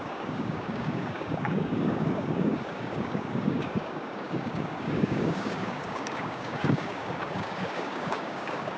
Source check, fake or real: fake